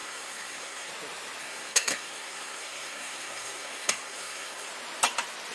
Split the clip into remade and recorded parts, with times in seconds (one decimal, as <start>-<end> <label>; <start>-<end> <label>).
0.0-0.9 remade; 0.9-1.4 recorded; 1.4-4.7 remade; 4.7-5.5 recorded